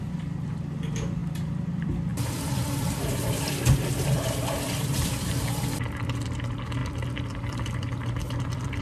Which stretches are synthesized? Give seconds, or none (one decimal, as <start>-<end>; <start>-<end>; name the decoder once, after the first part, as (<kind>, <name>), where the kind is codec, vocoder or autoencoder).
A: 0.0-8.8 (vocoder, BigVGAN v2)